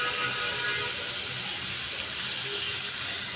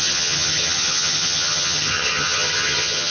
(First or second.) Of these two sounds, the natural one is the first